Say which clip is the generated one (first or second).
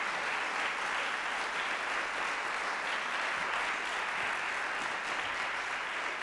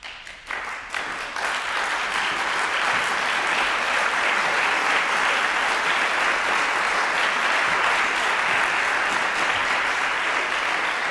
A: second